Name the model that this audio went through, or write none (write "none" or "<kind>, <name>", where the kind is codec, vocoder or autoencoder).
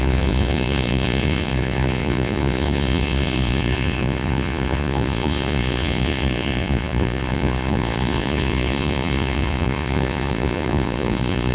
vocoder, Vocos